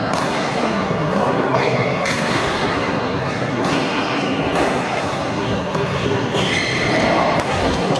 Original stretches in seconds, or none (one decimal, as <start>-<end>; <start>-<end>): 6.5-7.4